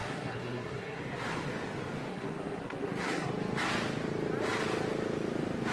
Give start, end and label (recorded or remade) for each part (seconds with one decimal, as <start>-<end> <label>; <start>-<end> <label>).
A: 0.0-1.0 remade; 1.0-2.1 recorded; 2.1-3.3 remade; 3.3-5.7 recorded